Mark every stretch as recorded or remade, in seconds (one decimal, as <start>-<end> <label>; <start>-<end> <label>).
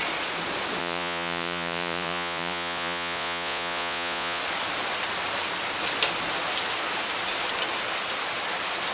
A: 0.0-0.8 recorded; 0.8-4.4 remade; 4.4-8.9 recorded